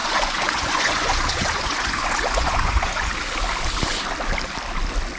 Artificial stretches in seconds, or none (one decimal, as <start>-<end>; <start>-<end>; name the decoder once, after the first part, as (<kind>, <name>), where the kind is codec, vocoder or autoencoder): 0.0-3.1 (vocoder, Vocos)